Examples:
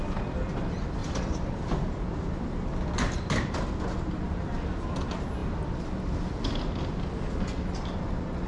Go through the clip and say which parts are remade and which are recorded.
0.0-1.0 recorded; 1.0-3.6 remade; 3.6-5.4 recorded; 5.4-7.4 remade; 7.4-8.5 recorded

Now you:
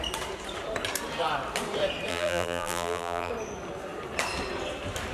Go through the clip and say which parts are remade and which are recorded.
0.0-2.1 recorded; 2.1-3.3 remade; 3.3-5.1 recorded

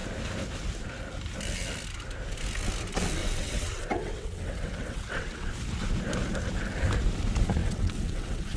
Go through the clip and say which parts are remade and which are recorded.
0.0-3.2 recorded; 3.2-5.5 remade; 5.5-7.6 recorded; 7.6-8.6 remade

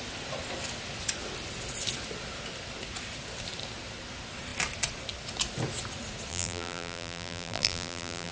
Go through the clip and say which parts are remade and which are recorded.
0.0-6.3 recorded; 6.3-8.3 remade

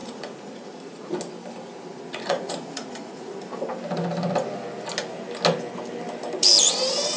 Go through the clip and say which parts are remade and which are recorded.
0.0-1.1 remade; 1.1-1.9 recorded; 1.9-3.3 remade; 3.3-7.2 recorded

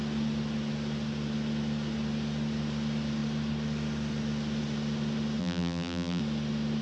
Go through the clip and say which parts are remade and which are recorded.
0.0-5.4 recorded; 5.4-6.2 remade; 6.2-6.8 recorded

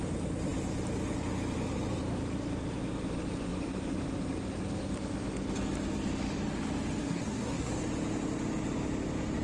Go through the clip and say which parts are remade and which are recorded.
0.0-7.0 recorded; 7.0-7.7 remade; 7.7-9.4 recorded

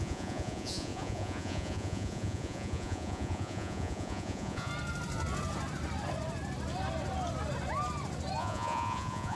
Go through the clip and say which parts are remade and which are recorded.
0.0-4.7 remade; 4.7-8.4 recorded; 8.4-9.4 remade